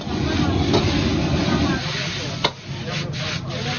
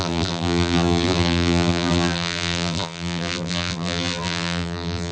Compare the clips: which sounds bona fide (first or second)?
first